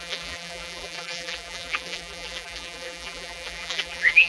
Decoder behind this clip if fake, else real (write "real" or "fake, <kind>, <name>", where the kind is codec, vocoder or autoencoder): fake, vocoder, BigVGAN v2